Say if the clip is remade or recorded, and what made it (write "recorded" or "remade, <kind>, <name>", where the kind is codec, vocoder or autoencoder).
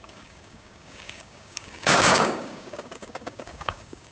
remade, codec, DAC